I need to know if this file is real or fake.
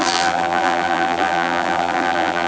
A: fake